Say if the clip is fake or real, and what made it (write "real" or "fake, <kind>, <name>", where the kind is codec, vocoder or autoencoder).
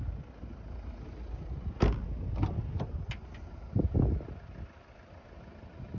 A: real